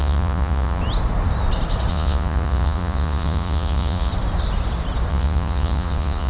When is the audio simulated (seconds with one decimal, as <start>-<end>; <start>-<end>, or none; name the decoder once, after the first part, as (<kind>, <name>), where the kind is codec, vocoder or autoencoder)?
0.0-0.8 (vocoder, Vocos); 1.9-4.1; 5.1-6.3